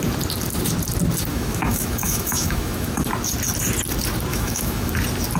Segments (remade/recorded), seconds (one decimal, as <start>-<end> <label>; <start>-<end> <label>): 0.0-1.3 recorded; 1.3-3.0 remade; 3.0-4.3 recorded; 4.3-4.9 remade; 4.9-5.4 recorded